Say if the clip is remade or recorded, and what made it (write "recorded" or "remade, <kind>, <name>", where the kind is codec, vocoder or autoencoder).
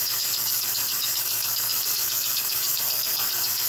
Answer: remade, codec, SNAC